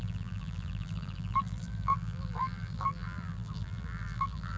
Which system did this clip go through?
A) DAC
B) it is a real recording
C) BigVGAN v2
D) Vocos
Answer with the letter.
C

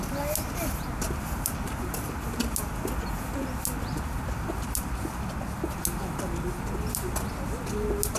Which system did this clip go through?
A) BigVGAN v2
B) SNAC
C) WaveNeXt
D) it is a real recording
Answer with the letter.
D